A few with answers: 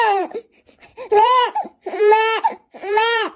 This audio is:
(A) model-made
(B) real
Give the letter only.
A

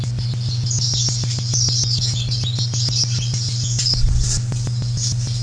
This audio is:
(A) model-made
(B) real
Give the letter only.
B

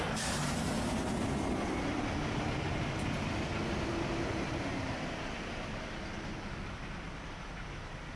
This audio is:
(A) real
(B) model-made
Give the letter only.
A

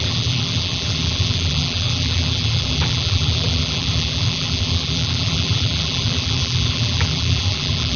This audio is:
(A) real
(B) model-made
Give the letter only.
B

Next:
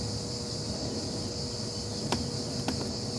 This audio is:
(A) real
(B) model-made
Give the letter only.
A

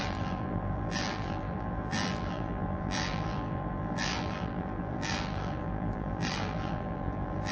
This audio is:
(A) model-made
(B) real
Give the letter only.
A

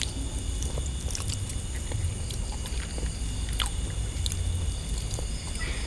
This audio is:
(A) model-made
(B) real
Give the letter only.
B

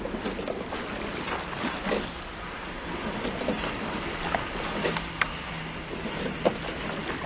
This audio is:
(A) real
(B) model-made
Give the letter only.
A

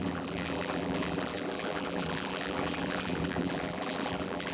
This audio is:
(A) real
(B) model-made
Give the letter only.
B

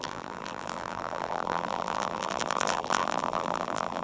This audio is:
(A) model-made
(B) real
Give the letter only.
A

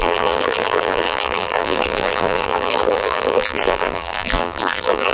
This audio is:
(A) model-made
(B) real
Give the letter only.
A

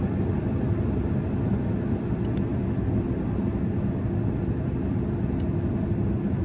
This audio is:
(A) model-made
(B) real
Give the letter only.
B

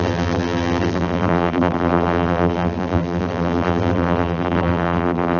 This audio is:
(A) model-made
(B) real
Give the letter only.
A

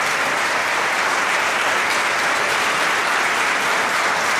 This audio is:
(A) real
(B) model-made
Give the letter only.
A